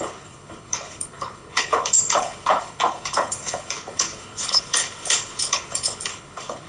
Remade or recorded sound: remade